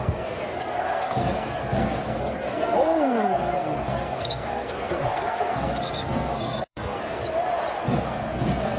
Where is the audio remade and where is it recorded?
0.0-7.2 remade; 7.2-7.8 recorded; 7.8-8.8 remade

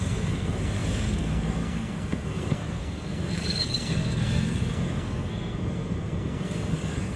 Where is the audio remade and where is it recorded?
0.0-7.2 remade